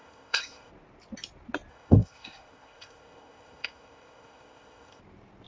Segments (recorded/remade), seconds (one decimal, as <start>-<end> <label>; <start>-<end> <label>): 0.0-0.7 remade; 0.7-1.7 recorded; 1.7-5.0 remade; 5.0-5.5 recorded